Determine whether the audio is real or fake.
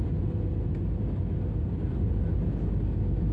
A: real